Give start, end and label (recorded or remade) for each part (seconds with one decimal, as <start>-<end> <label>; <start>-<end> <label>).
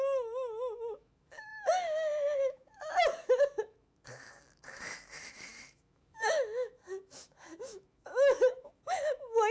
0.0-9.5 remade